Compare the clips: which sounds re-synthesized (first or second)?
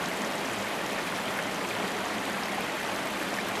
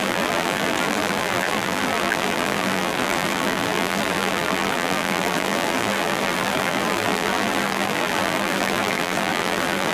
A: second